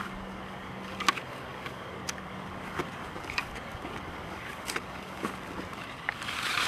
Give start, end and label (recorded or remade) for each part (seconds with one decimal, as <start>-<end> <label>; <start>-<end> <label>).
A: 0.0-6.7 remade